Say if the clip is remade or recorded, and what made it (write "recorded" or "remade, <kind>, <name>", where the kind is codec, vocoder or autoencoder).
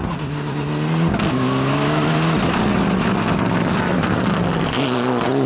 recorded